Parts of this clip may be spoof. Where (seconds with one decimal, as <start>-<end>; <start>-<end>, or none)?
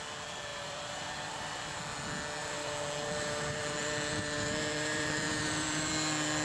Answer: 0.5-1.8; 2.4-5.9